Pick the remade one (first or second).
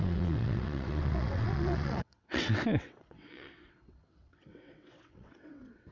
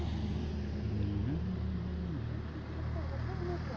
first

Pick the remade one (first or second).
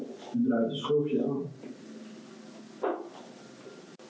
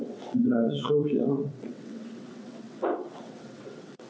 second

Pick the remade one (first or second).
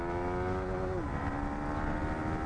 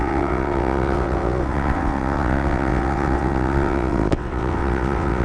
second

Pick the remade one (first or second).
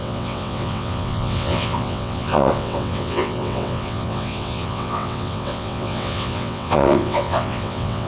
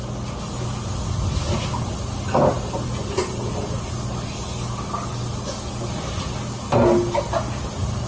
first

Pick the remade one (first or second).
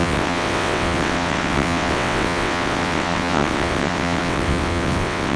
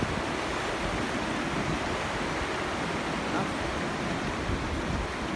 first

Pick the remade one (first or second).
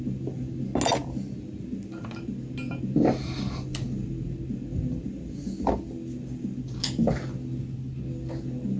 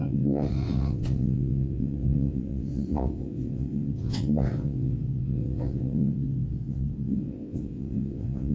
second